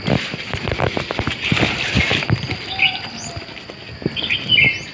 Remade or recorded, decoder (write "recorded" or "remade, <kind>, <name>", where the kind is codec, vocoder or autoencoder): recorded